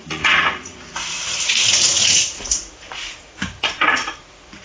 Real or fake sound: fake